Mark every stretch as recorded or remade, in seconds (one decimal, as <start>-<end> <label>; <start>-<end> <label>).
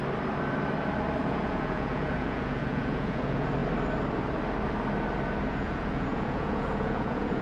0.0-1.2 recorded; 1.2-3.6 remade; 3.6-5.5 recorded; 5.5-7.4 remade